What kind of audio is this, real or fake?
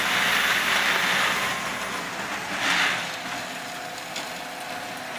real